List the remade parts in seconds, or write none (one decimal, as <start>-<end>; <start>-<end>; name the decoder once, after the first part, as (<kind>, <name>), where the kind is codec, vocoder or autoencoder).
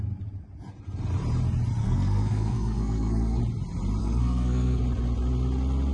1.8-3.4 (codec, SNAC); 4.0-4.8